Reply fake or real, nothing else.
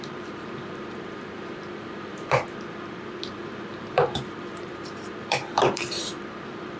fake